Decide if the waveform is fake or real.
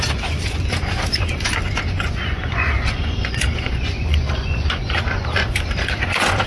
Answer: fake